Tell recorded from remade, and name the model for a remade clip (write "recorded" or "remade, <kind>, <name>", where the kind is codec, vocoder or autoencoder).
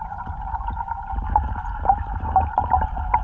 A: remade, vocoder, BigVGAN v2